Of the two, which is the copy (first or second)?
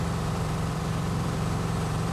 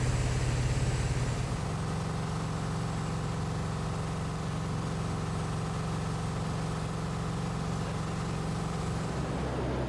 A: first